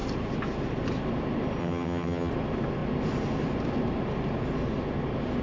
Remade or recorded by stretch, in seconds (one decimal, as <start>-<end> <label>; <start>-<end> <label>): 0.0-1.6 recorded; 1.6-2.3 remade; 2.3-5.4 recorded